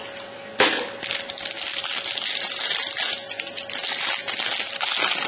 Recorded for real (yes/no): yes